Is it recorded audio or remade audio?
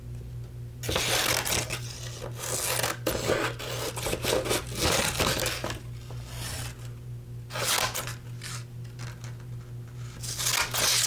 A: recorded